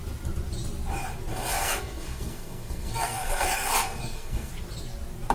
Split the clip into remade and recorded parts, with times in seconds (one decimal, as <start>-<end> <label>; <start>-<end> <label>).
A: 0.0-1.3 recorded; 1.3-4.5 remade; 4.5-5.3 recorded